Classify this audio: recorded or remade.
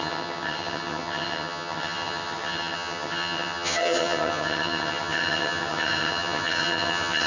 remade